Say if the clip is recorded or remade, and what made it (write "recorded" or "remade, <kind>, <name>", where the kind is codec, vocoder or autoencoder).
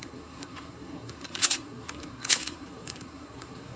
remade, codec, SNAC